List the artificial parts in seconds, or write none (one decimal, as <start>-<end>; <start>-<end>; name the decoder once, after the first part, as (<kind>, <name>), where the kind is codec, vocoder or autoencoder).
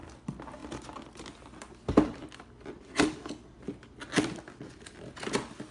none